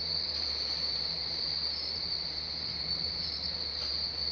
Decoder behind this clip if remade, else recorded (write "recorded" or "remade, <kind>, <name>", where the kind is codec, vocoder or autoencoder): remade, vocoder, BigVGAN v2